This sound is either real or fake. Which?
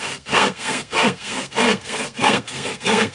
fake